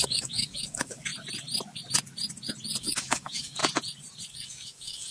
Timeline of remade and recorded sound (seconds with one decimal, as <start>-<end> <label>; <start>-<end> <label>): 0.0-1.1 remade; 1.1-2.8 recorded; 2.8-3.6 remade; 3.6-4.3 recorded; 4.3-5.1 remade